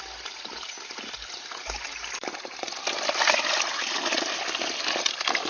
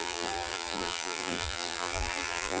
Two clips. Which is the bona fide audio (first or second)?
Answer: first